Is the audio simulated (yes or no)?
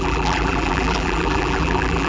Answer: yes